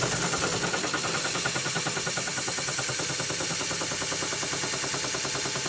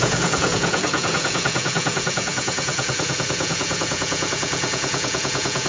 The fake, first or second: second